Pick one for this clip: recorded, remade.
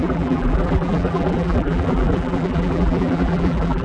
remade